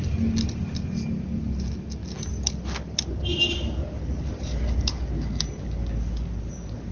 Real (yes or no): yes